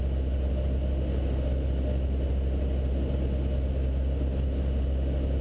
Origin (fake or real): real